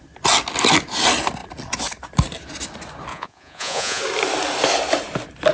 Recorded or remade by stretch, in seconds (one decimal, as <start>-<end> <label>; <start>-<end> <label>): 0.0-3.1 recorded; 3.1-4.0 remade; 4.0-5.5 recorded